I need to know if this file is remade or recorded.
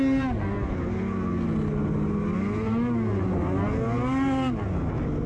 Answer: recorded